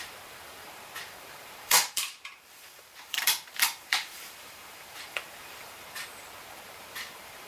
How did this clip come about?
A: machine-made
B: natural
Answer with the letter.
A